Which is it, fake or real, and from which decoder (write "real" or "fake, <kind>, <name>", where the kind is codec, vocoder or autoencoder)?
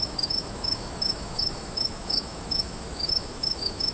fake, autoencoder, DAC-VAE